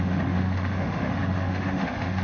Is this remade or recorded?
remade